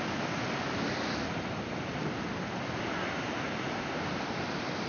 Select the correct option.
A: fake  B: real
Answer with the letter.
B